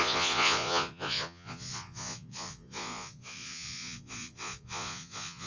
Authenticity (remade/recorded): remade